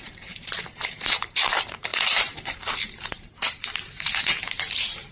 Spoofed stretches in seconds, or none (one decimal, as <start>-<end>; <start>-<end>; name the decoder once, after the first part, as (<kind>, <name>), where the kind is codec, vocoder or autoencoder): 0.0-5.1 (vocoder, BigVGAN v2)